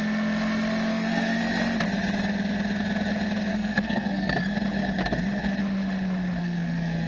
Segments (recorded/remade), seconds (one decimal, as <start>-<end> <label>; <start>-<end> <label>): 0.0-0.9 recorded; 0.9-1.4 remade; 1.4-3.5 recorded; 3.5-4.3 remade; 4.3-6.4 recorded; 6.4-7.1 remade